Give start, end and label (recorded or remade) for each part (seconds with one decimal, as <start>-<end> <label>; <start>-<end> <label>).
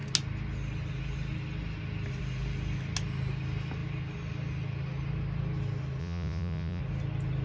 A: 0.0-6.0 recorded; 6.0-6.8 remade; 6.8-7.4 recorded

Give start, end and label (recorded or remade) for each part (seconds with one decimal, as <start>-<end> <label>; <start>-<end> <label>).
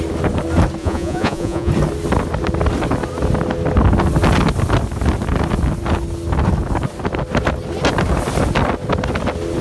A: 0.0-0.8 recorded; 0.8-1.7 remade; 1.7-9.6 recorded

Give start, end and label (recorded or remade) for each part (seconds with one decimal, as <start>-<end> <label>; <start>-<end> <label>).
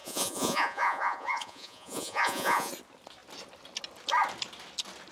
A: 0.0-2.7 remade; 2.7-5.1 recorded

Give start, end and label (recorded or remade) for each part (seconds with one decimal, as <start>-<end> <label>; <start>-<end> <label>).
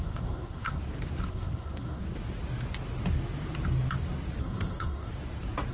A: 0.0-0.8 remade; 0.8-1.3 recorded; 1.3-2.0 remade; 2.0-4.4 recorded; 4.4-5.1 remade; 5.1-5.7 recorded